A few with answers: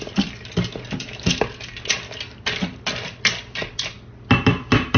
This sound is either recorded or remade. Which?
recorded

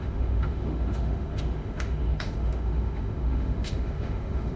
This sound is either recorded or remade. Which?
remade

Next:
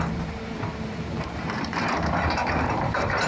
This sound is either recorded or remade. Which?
remade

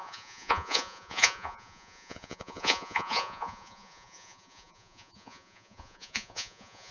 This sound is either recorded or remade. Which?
remade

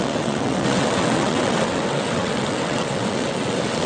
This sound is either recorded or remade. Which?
remade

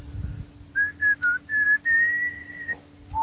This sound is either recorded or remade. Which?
recorded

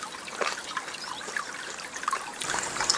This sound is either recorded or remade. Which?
remade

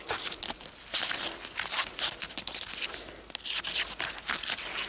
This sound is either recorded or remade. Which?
recorded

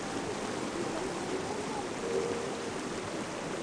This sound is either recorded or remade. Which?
remade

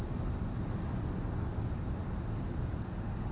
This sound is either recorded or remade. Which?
recorded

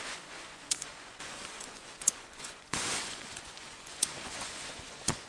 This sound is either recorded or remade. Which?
remade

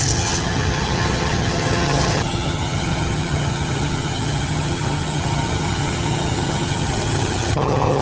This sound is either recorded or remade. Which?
remade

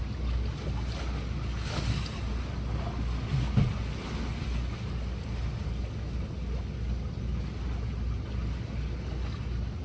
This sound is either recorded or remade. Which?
recorded